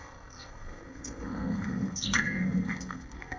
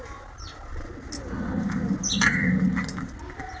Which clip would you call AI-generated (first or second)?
first